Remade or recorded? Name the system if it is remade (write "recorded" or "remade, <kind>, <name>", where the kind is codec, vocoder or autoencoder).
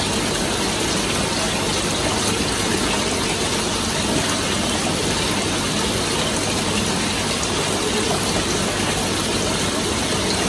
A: recorded